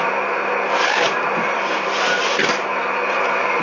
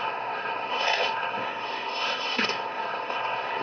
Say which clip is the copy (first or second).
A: second